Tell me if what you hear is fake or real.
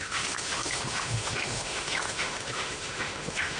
fake